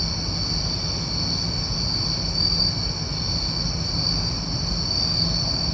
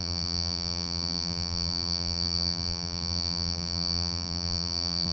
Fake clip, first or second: second